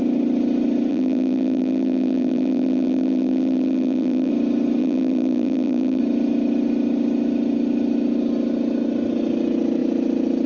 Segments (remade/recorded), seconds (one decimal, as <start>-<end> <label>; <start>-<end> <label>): 0.0-0.9 recorded; 0.9-4.3 remade; 4.3-4.8 recorded; 4.8-6.0 remade; 6.0-10.5 recorded